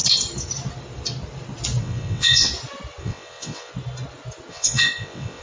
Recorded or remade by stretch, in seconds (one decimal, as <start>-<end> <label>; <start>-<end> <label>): 0.0-1.8 recorded; 1.8-2.5 remade; 2.5-3.0 recorded; 3.0-3.7 remade; 3.7-4.5 recorded; 4.5-5.4 remade